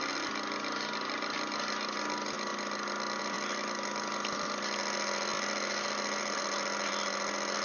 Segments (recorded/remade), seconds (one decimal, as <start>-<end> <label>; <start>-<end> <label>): 0.0-7.6 recorded